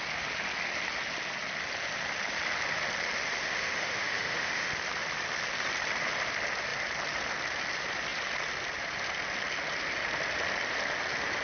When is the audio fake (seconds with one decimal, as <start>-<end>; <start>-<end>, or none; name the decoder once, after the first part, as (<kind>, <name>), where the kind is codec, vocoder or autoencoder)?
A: 3.4-4.7 (autoencoder, DAC-VAE)